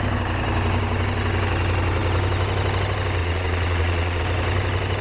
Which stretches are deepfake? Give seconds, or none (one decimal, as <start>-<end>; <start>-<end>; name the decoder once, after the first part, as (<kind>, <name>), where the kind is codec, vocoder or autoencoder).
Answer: 3.2-4.2 (vocoder, Vocos)